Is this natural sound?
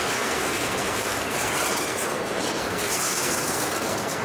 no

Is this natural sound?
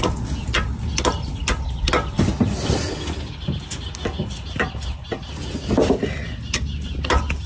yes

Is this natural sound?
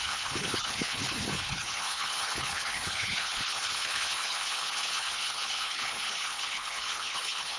no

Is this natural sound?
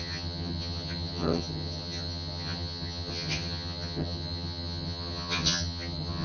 no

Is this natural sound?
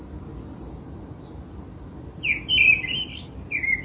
yes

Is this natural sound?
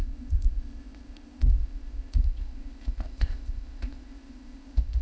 no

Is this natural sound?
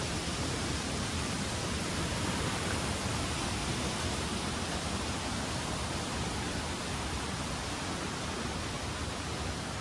no